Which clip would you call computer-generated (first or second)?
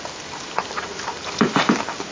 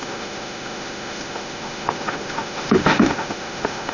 second